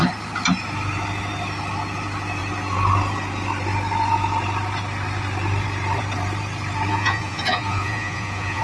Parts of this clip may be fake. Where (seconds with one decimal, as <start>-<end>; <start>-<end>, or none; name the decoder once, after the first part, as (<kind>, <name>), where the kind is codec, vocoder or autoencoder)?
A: 6.9-8.6 (vocoder, Vocos)